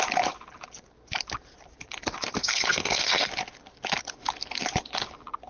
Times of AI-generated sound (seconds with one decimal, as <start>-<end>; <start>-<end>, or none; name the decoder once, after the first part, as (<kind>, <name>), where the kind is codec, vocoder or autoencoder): 2.4-3.3 (codec, SNAC)